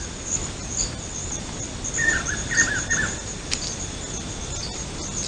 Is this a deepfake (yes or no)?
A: no